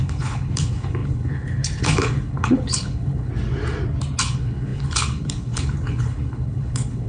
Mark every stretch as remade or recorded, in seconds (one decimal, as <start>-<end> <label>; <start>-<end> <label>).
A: 0.0-3.3 remade; 3.3-4.2 recorded; 4.2-7.1 remade